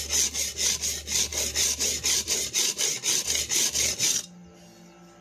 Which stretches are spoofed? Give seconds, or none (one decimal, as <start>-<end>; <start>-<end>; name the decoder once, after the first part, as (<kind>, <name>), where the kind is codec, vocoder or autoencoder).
1.3-3.4 (vocoder, BigVGAN v2)